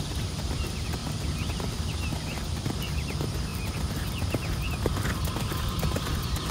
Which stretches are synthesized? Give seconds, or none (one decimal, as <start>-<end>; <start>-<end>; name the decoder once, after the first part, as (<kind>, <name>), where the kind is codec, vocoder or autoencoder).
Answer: 0.0-6.5 (vocoder, BigVGAN v2)